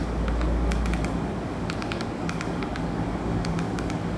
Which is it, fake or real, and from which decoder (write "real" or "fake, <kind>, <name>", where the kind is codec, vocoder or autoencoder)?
fake, codec, DAC